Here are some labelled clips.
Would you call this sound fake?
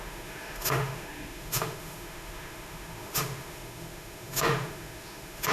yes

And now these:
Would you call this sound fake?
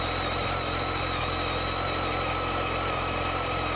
no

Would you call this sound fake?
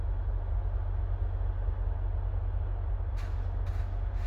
no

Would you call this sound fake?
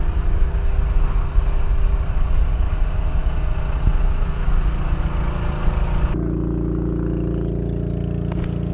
no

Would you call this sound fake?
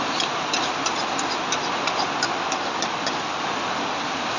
no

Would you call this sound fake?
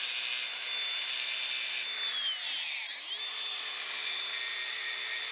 no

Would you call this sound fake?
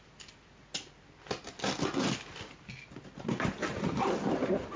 no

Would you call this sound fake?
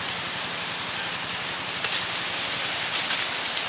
no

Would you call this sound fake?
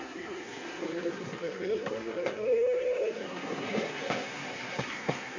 yes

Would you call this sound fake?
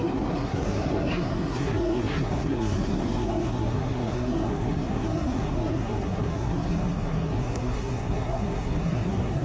yes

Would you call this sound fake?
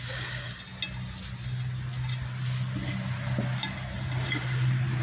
no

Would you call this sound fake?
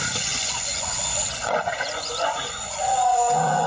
yes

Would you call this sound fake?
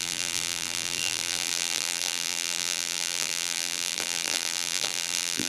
yes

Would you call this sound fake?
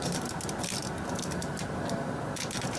no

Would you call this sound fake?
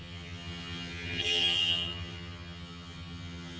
yes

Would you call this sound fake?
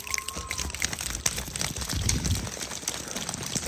no